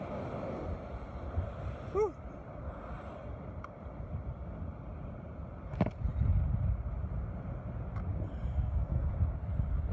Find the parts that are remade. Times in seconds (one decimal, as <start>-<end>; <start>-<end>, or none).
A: 8.5-9.1